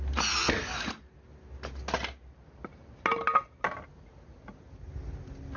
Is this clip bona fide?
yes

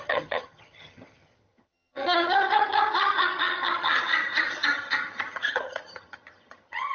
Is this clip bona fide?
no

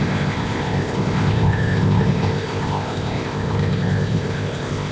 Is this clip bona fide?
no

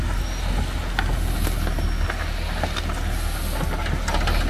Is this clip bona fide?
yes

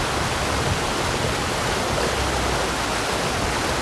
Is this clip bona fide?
yes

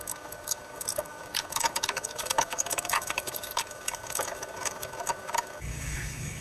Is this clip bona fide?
no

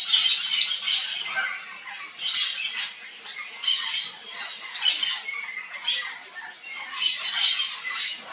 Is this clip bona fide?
yes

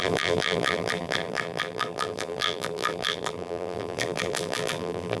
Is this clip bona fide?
no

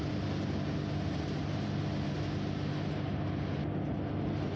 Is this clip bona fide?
yes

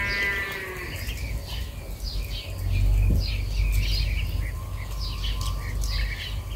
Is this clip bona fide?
yes